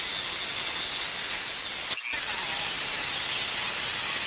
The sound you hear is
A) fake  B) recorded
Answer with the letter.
B